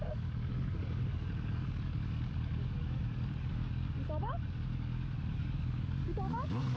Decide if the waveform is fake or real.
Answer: fake